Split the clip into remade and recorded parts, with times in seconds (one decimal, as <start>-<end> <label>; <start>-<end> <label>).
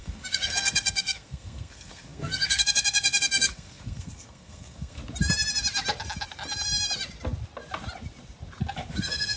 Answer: 0.0-5.0 remade; 5.0-8.9 recorded; 8.9-9.4 remade